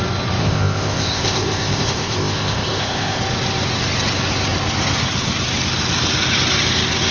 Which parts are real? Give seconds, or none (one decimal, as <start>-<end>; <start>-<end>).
0.0-0.4; 3.2-7.1

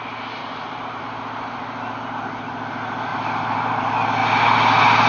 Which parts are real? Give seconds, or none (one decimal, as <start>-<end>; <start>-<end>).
0.0-0.4; 1.0-3.1; 3.8-5.1